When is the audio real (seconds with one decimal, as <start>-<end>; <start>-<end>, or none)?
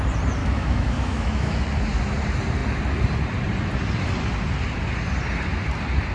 0.0-0.4; 1.6-6.1